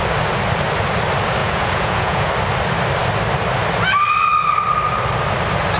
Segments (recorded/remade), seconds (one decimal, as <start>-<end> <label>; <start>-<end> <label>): 0.0-1.4 recorded; 1.4-2.3 remade; 2.3-5.8 recorded